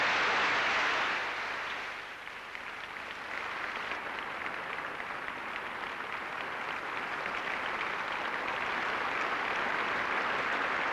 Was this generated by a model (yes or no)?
no